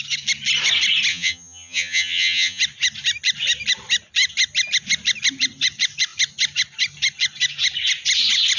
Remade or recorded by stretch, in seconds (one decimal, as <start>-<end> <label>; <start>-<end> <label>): 0.0-1.1 recorded; 1.1-2.6 remade; 2.6-8.6 recorded